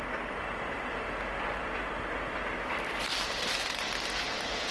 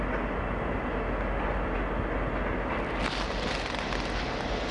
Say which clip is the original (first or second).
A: second